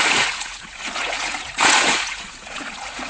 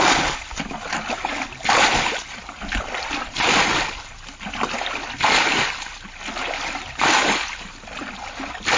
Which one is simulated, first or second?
first